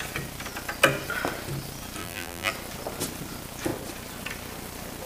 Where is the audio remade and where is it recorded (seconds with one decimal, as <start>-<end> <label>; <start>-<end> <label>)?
0.0-2.0 recorded; 2.0-2.5 remade; 2.5-5.1 recorded